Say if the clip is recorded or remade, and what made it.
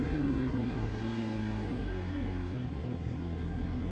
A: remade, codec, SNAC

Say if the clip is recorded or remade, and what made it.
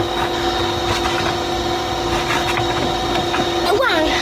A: recorded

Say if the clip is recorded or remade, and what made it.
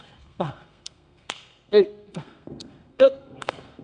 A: remade, codec, SNAC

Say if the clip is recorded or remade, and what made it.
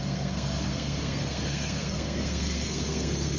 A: remade, codec, SNAC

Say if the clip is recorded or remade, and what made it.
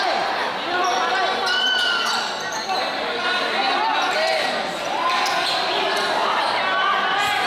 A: recorded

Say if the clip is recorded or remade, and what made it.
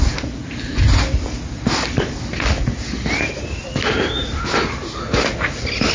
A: recorded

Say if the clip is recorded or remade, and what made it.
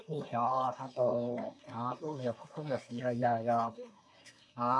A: remade, codec, SNAC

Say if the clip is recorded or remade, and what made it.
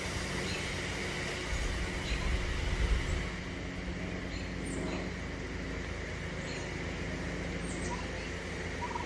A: recorded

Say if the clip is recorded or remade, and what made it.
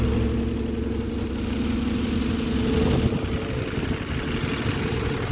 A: recorded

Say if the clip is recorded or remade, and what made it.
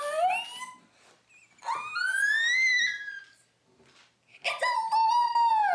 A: recorded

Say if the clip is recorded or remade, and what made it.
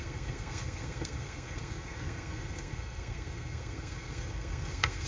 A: remade, codec, SNAC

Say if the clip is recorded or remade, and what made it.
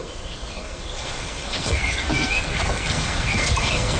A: remade, codec, SNAC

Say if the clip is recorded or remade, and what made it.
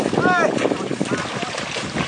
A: recorded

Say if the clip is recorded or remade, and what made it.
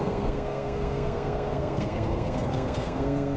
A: remade, codec, SNAC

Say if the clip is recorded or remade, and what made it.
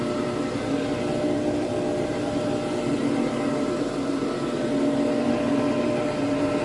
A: recorded